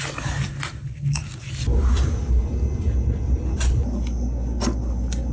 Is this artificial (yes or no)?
no